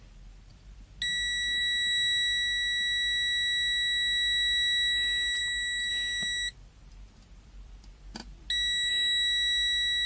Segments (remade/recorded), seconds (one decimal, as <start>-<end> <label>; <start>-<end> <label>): 0.0-10.1 recorded